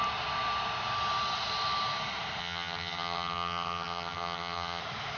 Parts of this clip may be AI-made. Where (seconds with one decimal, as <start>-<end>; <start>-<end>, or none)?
2.4-4.8